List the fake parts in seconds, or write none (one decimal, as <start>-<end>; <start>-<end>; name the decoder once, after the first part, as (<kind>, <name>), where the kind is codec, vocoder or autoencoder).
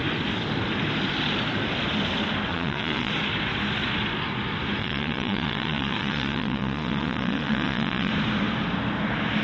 2.5-3.1 (vocoder, Vocos); 4.8-8.1